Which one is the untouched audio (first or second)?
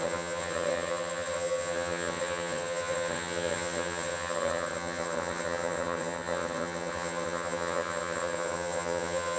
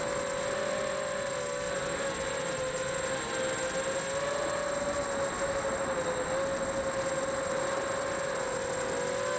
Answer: second